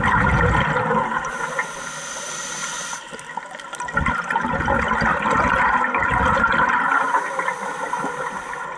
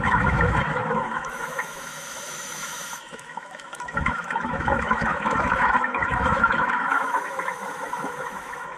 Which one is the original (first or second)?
first